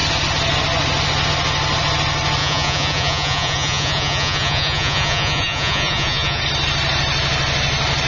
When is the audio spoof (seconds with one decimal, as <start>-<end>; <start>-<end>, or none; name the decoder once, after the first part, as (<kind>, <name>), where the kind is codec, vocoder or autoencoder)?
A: 2.4-6.4 (vocoder, Vocos)